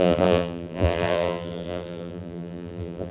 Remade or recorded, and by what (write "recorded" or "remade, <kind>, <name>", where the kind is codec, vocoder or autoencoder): remade, vocoder, BigVGAN v2